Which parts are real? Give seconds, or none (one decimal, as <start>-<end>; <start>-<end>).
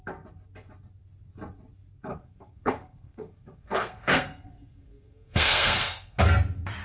0.0-2.1; 6.2-6.8